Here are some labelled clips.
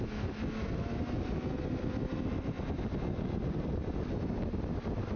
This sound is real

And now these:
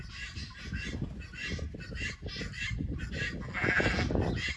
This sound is real